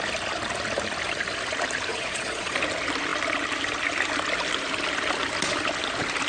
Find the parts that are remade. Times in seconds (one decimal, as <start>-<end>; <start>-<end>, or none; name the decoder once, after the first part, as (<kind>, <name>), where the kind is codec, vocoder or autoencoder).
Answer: 1.9-2.6 (vocoder, Vocos)